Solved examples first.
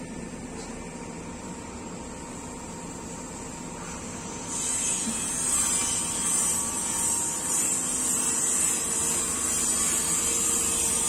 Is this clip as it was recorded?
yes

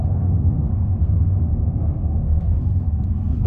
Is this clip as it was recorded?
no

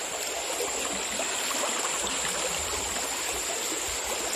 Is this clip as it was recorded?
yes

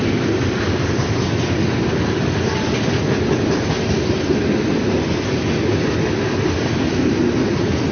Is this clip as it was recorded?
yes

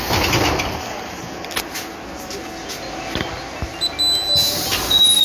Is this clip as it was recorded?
yes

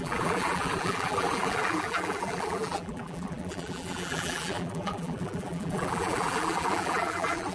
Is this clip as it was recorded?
no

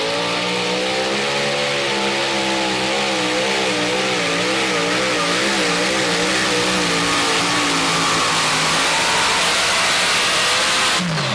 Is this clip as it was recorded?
yes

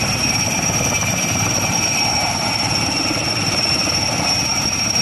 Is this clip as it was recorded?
no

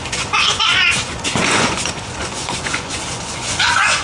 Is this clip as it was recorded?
no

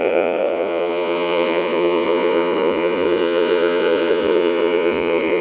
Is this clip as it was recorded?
no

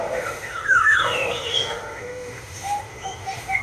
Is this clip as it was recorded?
no